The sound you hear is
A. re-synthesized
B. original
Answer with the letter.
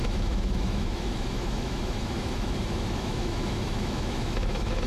A